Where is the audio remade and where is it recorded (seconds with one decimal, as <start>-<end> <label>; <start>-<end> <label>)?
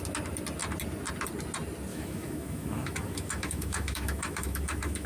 0.0-1.9 recorded; 1.9-5.1 remade